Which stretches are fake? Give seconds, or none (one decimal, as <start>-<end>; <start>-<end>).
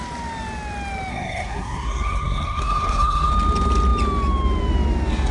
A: 1.1-3.3